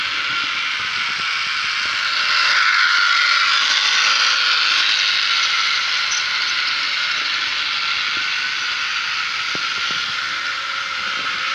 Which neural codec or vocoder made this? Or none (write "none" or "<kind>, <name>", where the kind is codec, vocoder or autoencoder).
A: none